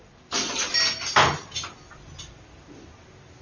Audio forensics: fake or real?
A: real